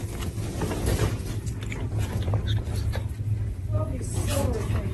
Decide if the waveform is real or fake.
real